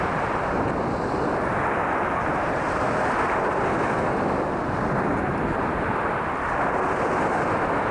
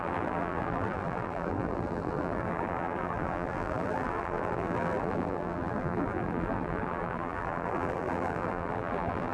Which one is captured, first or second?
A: first